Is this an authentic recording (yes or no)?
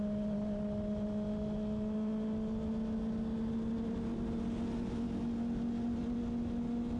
yes